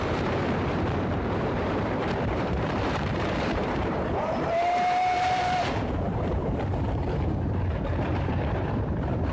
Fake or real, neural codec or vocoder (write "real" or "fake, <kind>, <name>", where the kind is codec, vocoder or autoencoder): fake, vocoder, BigVGAN v2